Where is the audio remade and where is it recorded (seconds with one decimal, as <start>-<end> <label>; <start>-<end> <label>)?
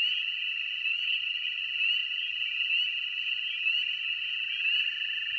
0.0-0.9 recorded; 0.9-1.6 remade; 1.6-5.4 recorded